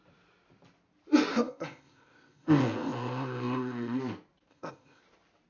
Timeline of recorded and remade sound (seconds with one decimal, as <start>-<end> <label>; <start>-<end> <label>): 0.0-1.3 recorded; 1.3-4.0 remade; 4.0-4.5 recorded; 4.5-5.0 remade; 5.0-5.5 recorded